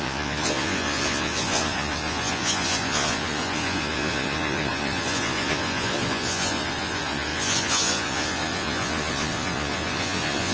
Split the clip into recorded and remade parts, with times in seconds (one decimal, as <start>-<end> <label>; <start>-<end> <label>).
0.0-10.5 remade